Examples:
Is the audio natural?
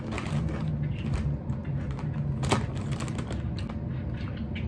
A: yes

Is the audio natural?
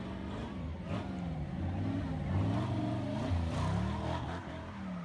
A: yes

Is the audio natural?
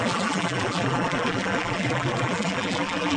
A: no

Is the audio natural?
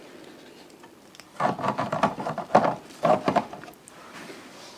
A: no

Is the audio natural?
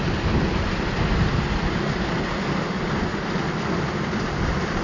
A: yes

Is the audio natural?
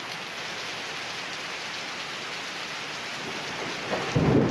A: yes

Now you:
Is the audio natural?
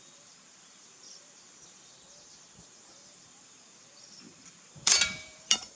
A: no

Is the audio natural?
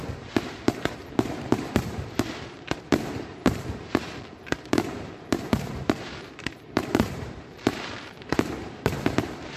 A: no